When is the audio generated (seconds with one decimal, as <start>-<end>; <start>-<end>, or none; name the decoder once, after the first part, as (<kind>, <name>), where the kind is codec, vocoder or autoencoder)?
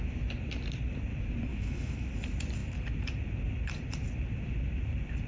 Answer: 1.5-2.1 (autoencoder, DAC-VAE)